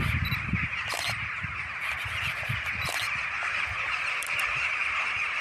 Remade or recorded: recorded